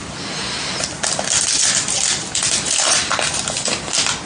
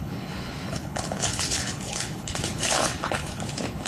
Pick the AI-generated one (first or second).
second